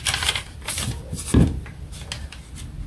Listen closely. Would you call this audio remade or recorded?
recorded